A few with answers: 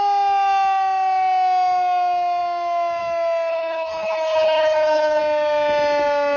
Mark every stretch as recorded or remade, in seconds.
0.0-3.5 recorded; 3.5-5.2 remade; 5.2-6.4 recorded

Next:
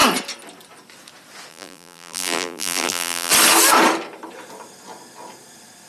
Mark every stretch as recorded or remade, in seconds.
0.0-1.5 recorded; 1.5-3.3 remade; 3.3-5.9 recorded

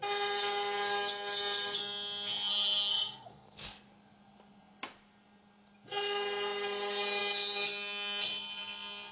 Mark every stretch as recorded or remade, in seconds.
0.0-2.5 recorded; 2.5-3.6 remade; 3.6-9.1 recorded